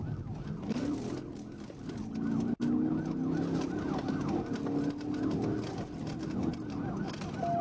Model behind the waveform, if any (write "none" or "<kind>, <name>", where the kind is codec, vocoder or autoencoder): none